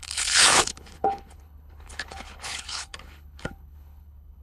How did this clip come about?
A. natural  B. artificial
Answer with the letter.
B